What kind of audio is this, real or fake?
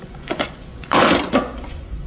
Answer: fake